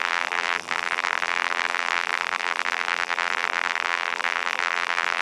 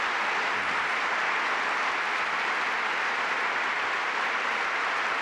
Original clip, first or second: second